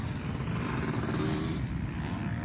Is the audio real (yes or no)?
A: yes